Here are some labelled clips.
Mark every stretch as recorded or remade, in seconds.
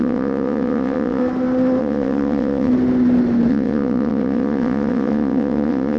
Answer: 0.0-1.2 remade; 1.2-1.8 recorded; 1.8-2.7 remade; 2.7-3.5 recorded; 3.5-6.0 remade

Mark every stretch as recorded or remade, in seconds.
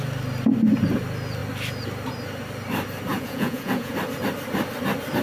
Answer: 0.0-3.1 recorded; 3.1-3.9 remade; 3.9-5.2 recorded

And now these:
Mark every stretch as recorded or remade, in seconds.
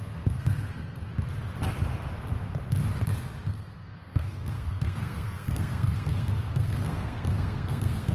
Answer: 0.0-1.1 remade; 1.1-3.5 recorded; 3.5-8.1 remade